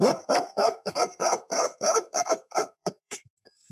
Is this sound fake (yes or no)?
yes